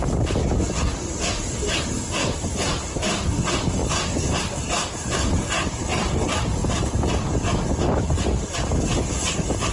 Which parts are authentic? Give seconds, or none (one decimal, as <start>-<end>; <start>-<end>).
0.0-9.7